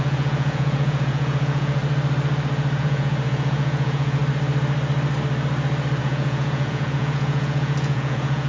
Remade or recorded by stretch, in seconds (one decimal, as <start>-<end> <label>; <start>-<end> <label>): 0.0-1.8 remade; 1.8-2.8 recorded; 2.8-4.2 remade; 4.2-6.0 recorded; 6.0-8.5 remade